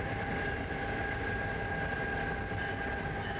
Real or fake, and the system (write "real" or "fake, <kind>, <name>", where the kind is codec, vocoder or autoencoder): real